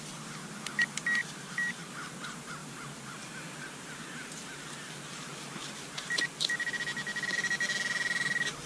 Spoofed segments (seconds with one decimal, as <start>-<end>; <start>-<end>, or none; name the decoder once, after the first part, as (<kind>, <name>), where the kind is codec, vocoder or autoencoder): 1.2-1.9 (vocoder, BigVGAN v2); 2.6-3.9